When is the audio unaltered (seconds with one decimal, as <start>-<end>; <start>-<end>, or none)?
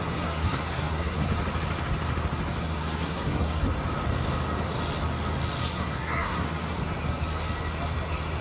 1.3-2.6; 3.6-5.6; 6.8-8.4